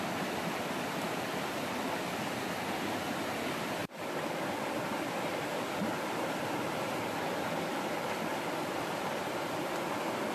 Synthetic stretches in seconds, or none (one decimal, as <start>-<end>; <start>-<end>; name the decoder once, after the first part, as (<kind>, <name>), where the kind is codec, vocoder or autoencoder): 0.0-10.3 (vocoder, BigVGAN v2)